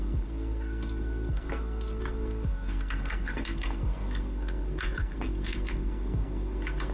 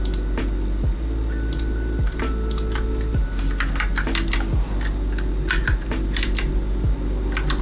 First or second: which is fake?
first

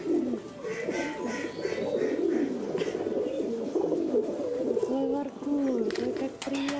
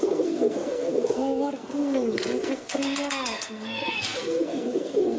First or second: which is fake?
second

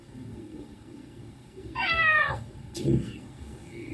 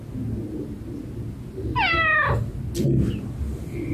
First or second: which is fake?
first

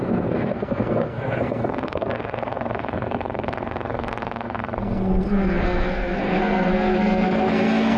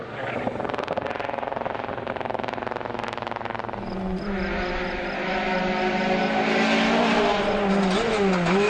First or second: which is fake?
first